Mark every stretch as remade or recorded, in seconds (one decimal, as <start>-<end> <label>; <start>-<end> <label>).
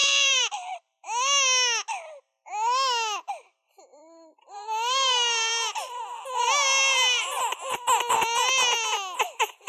0.0-0.8 remade; 0.8-3.9 recorded; 3.9-6.0 remade; 6.0-9.7 recorded